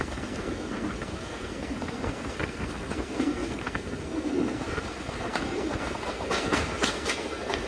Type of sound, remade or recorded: remade